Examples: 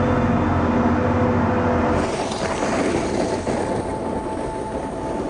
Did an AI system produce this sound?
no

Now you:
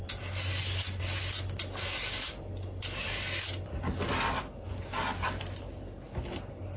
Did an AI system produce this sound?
no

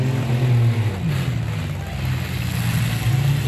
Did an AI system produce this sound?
no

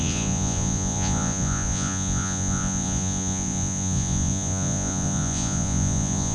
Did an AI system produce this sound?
yes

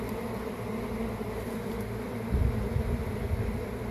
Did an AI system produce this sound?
yes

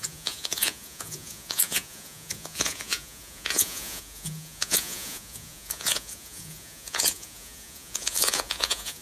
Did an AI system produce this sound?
yes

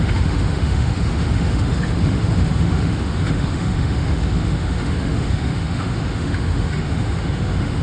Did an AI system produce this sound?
yes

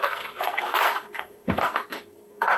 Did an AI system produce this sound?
yes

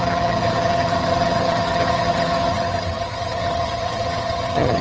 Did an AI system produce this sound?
yes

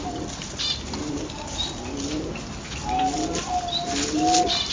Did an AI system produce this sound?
no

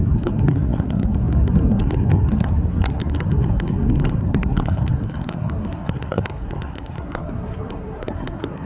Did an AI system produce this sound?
yes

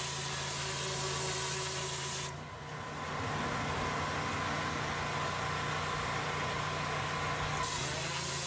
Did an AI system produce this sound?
no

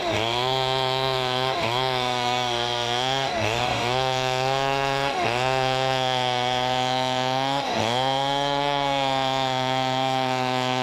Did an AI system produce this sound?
yes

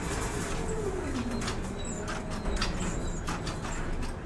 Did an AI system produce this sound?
no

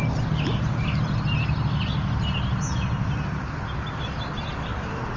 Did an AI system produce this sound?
no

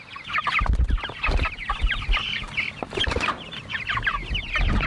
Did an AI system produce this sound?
no